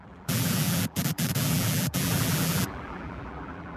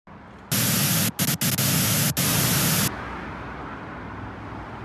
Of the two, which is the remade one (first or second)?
first